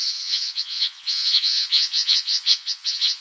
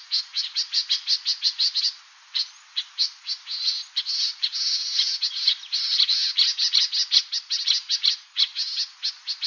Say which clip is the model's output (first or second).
first